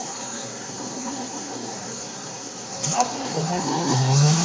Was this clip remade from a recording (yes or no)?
yes